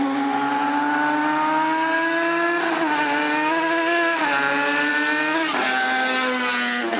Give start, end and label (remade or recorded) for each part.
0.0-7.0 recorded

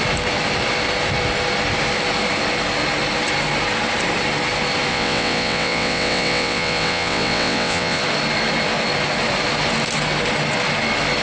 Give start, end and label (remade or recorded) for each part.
0.0-4.9 recorded; 4.9-8.0 remade; 8.0-11.2 recorded

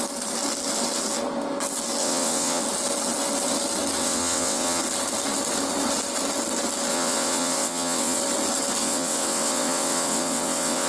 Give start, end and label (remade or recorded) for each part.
0.0-2.0 recorded; 2.0-2.6 remade; 2.6-4.0 recorded; 4.0-4.8 remade; 4.8-6.9 recorded; 6.9-8.2 remade; 8.2-8.8 recorded; 8.8-10.9 remade

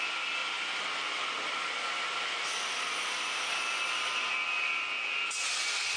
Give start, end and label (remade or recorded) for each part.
0.0-6.0 recorded

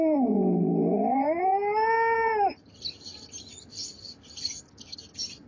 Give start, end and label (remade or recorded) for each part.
0.0-5.5 recorded

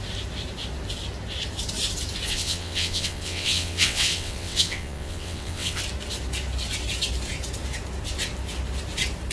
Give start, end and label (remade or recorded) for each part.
0.0-2.3 recorded; 2.3-5.8 remade; 5.8-9.3 recorded

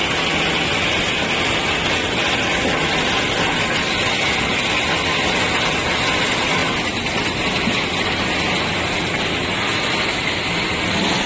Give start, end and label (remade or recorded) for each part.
0.0-11.3 recorded